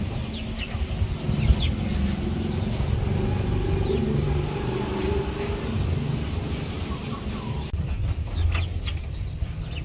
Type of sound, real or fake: real